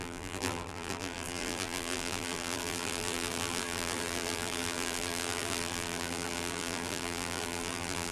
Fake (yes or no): yes